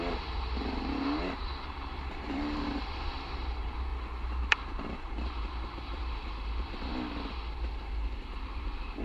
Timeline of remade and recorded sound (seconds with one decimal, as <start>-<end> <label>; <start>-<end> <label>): 0.0-3.9 remade; 3.9-4.4 recorded; 4.4-6.9 remade; 6.9-7.7 recorded; 7.7-9.0 remade